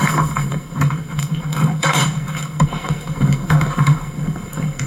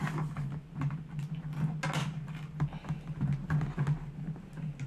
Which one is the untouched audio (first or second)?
second